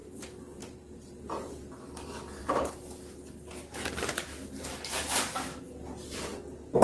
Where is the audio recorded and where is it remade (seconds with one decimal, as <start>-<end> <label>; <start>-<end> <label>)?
0.0-1.2 remade; 1.2-6.8 recorded